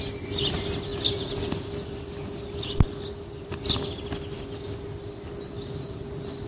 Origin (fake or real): real